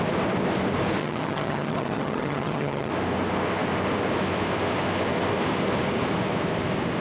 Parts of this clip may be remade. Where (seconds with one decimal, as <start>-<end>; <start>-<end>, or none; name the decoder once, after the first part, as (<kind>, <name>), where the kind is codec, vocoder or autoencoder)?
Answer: 1.0-2.9 (vocoder, HiFi-GAN)

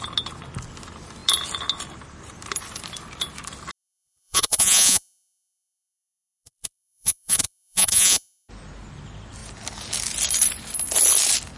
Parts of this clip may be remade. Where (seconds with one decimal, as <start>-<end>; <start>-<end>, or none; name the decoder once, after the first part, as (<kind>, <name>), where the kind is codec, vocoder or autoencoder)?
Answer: 3.7-8.5 (vocoder, Vocos)

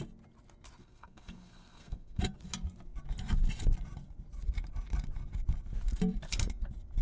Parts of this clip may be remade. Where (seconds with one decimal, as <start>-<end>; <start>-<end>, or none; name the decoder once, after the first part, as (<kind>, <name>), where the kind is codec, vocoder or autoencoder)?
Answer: 0.8-2.2 (codec, SNAC)

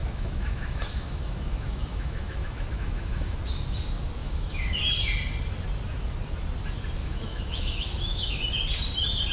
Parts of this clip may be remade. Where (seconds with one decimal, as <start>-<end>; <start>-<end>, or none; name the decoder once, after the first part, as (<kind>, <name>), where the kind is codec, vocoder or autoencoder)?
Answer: 0.0-3.4 (autoencoder, DAC-VAE); 4.2-4.8; 7.0-8.4

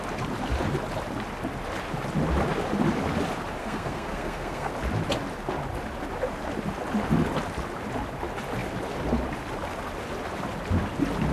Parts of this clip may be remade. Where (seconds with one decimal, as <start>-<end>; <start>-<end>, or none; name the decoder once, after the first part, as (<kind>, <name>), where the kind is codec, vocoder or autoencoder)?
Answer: 3.6-4.7 (codec, SNAC)

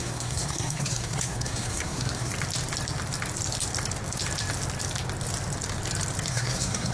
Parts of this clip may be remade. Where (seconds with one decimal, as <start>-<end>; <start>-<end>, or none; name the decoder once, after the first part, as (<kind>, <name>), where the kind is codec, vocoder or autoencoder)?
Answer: 0.0-2.3 (codec, SNAC); 6.3-6.9

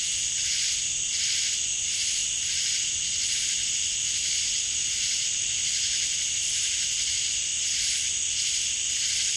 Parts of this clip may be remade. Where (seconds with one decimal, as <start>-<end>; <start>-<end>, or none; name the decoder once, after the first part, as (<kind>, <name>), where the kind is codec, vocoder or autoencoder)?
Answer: none